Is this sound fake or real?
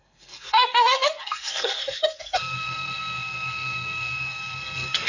fake